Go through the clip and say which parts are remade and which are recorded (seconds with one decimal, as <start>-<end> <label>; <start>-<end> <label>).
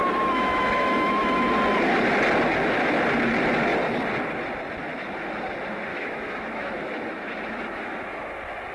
0.0-1.4 remade; 1.4-5.9 recorded; 5.9-8.2 remade; 8.2-8.7 recorded